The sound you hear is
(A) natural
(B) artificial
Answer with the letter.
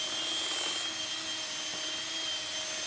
A